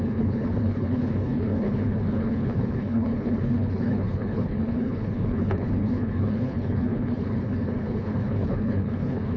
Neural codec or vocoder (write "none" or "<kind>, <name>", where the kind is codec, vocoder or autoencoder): codec, HILCodec